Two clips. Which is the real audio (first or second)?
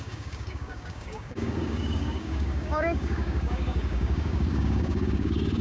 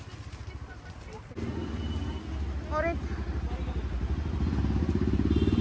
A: second